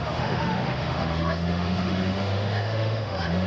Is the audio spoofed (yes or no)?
yes